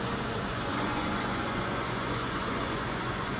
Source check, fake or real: fake